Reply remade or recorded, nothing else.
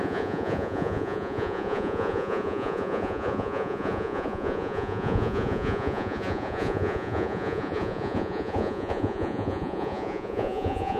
remade